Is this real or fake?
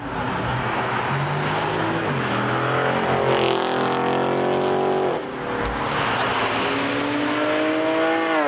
real